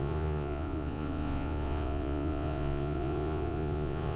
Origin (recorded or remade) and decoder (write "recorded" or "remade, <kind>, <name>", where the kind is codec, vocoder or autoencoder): remade, vocoder, Vocos